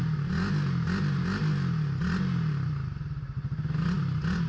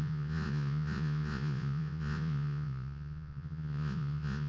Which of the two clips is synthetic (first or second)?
second